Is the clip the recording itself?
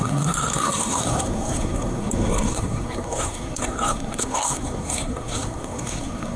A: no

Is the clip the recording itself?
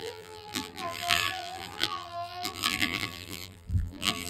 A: no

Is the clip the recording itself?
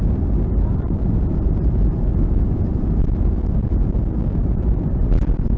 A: yes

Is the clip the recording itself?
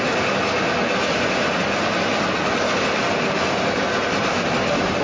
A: yes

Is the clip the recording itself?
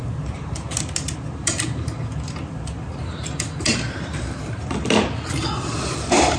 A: yes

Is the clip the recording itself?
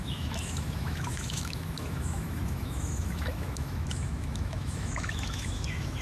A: no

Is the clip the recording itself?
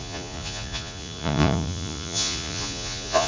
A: no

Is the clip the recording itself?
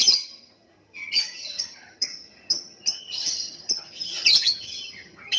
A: no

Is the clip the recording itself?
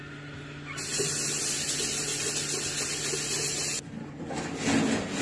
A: yes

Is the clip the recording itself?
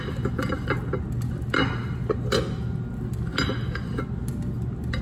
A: yes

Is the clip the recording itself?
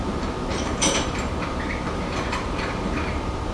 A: no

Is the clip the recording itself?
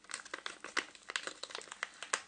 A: yes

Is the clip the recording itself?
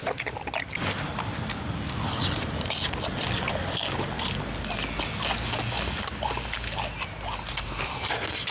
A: yes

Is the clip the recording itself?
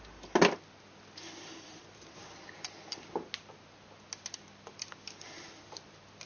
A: yes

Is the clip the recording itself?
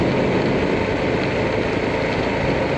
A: yes